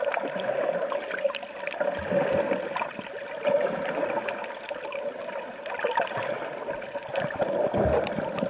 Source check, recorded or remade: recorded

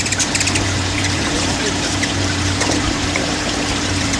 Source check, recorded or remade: remade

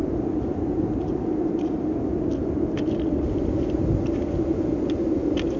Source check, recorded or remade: recorded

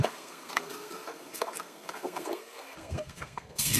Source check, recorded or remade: remade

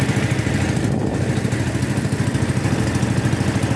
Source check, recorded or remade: recorded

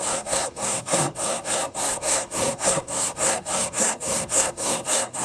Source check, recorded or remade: remade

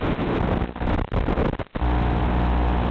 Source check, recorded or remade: recorded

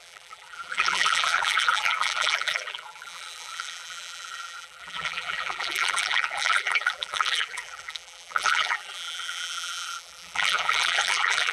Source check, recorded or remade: remade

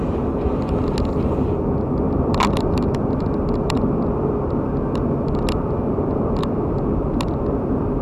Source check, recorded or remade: recorded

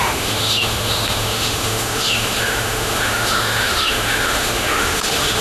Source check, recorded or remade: remade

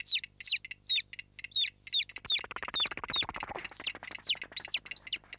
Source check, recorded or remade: recorded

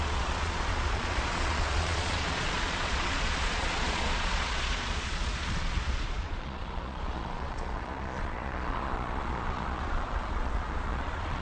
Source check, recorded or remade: remade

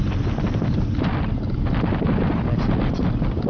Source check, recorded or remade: recorded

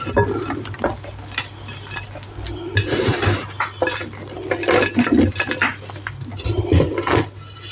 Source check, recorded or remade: recorded